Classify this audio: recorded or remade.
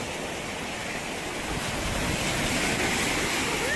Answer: recorded